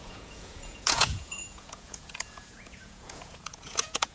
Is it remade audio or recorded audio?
remade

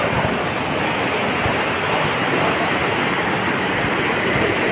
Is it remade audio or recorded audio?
recorded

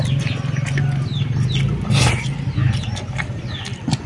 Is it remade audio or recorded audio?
remade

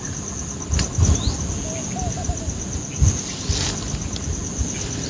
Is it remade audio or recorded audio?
recorded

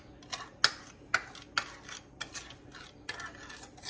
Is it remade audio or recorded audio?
recorded